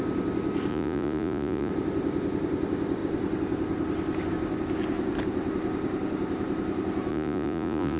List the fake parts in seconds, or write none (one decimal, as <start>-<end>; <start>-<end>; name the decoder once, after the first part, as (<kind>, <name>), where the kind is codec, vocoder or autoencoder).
0.7-1.7 (vocoder, Vocos); 7.1-8.0

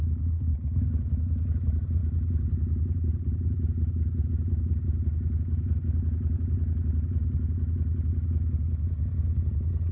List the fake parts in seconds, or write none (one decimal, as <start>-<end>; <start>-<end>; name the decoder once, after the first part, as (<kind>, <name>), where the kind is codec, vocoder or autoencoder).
0.0-7.2 (vocoder, BigVGAN v2); 9.5-9.9

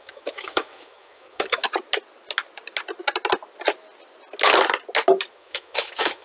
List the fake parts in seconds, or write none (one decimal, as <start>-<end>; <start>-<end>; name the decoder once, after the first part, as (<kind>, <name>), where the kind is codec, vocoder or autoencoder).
0.0-1.6 (autoencoder, DAC-VAE); 5.3-6.2

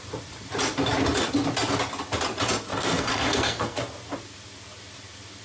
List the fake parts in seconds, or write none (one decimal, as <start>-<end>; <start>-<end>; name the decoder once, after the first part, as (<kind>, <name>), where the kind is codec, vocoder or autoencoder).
2.7-3.8 (codec, SNAC)

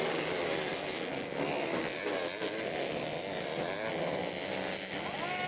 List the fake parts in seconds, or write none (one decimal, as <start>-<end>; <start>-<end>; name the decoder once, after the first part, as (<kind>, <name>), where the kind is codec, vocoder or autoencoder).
none